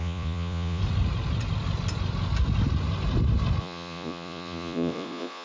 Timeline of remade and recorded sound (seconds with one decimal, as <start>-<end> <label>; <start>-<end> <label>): 0.0-0.8 remade; 0.8-3.6 recorded; 3.6-5.4 remade